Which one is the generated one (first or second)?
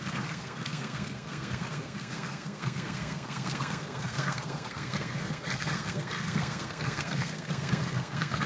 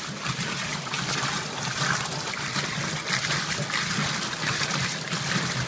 first